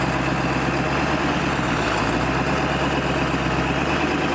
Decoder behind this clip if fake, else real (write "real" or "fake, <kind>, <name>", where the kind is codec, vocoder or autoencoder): real